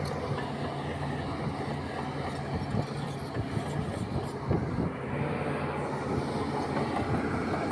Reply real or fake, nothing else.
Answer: real